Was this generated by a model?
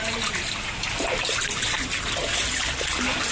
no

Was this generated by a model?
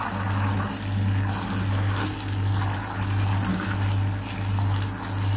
no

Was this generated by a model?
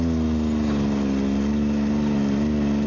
no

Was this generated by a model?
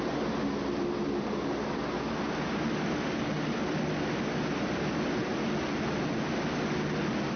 no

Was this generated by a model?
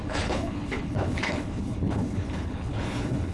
yes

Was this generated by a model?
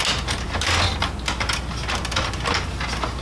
no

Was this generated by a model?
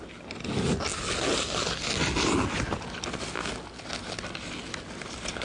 no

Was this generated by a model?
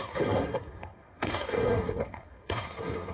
yes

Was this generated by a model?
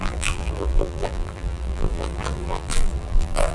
yes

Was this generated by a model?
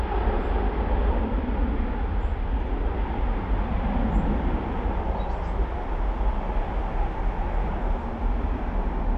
no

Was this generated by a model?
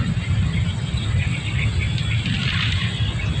no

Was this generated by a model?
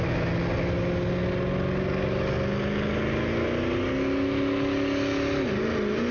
no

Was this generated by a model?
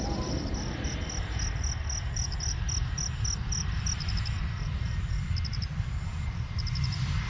yes